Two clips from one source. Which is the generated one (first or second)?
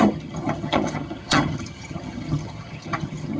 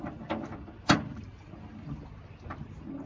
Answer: first